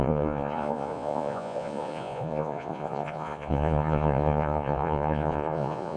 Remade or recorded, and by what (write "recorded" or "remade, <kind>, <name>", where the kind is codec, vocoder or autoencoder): remade, vocoder, Vocos